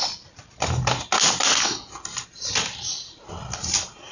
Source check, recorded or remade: recorded